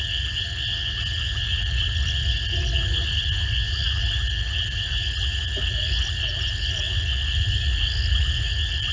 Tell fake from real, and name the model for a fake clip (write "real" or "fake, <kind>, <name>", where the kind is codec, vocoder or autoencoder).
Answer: real